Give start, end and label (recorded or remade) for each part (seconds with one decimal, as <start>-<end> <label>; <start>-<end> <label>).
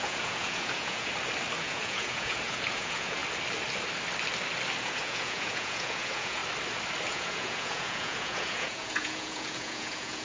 0.0-1.1 remade; 1.1-1.6 recorded; 1.6-3.2 remade; 3.2-4.8 recorded; 4.8-6.4 remade; 6.4-7.1 recorded; 7.1-10.2 remade